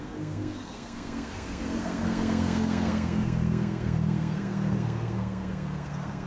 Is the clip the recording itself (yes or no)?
no